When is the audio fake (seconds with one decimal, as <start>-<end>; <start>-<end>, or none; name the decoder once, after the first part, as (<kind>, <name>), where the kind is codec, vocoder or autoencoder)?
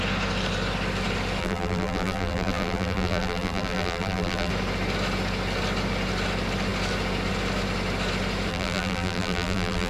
1.4-4.5 (vocoder, BigVGAN v2); 8.5-9.9